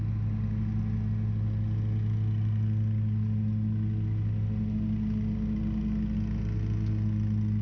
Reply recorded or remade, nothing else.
recorded